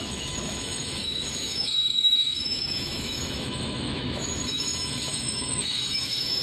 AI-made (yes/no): yes